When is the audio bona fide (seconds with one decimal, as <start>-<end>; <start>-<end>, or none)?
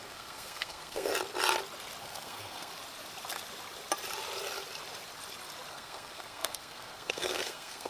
1.1-2.0; 2.7-5.7